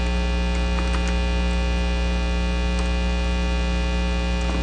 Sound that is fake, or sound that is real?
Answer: real